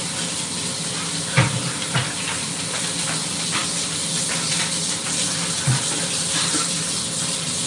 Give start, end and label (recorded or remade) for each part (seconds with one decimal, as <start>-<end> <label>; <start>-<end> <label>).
0.0-7.7 recorded